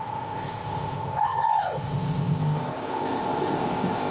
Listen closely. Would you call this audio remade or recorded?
remade